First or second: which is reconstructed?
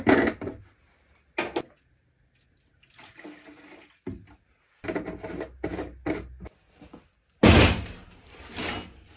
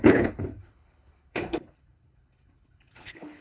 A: second